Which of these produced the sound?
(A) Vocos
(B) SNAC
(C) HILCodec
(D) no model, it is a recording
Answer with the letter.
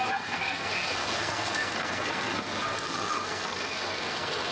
B